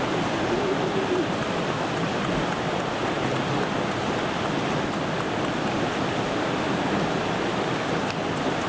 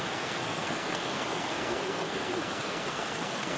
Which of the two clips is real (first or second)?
first